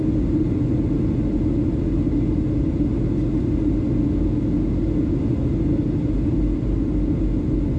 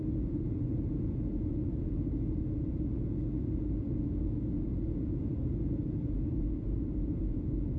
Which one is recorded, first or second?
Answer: first